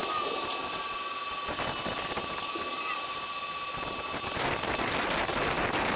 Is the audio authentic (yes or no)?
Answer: yes